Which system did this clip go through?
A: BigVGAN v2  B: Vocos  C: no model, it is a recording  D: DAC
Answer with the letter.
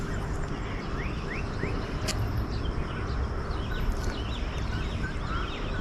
C